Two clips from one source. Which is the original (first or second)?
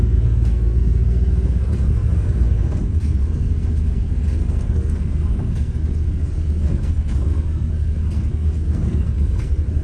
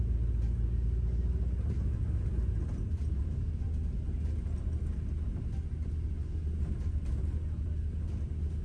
second